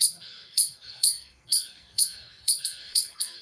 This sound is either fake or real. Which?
fake